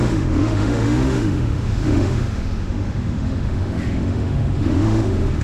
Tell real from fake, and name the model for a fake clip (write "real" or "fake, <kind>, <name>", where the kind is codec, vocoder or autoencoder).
fake, autoencoder, DAC-VAE